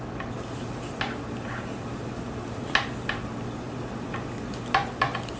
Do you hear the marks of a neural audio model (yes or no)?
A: no